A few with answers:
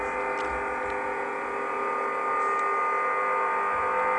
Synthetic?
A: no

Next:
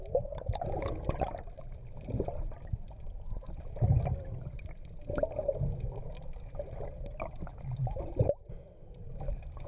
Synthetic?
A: no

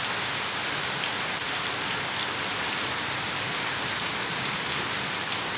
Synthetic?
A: no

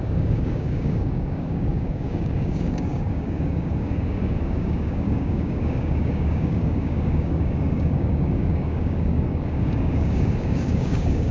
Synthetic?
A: yes